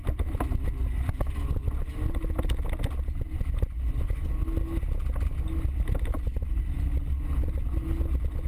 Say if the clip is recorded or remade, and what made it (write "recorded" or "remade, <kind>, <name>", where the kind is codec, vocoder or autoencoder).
recorded